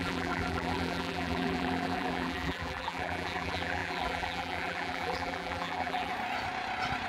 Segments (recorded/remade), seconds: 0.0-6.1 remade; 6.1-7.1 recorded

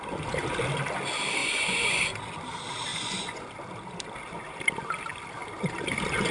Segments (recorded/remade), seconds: 0.0-1.4 recorded; 1.4-2.0 remade; 2.0-2.9 recorded; 2.9-3.4 remade; 3.4-6.3 recorded

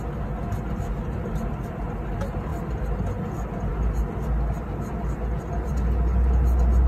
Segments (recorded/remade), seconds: 0.0-6.9 recorded

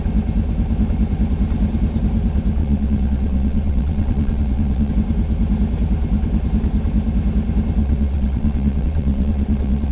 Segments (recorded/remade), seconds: 0.0-2.6 recorded; 2.6-4.9 remade; 4.9-7.8 recorded; 7.8-9.9 remade

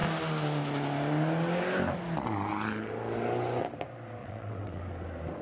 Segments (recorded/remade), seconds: 0.0-4.2 recorded; 4.2-4.8 remade; 4.8-5.4 recorded

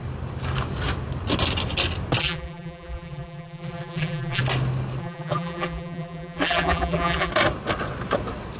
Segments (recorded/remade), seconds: 0.0-2.2 recorded; 2.2-4.4 remade; 4.4-5.0 recorded; 5.0-7.3 remade; 7.3-8.6 recorded

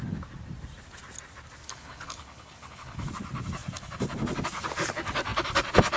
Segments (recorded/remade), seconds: 0.0-1.6 recorded; 1.6-3.1 remade; 3.1-6.0 recorded